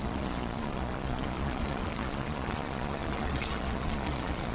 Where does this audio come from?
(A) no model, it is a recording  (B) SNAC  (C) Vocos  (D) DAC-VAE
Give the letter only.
C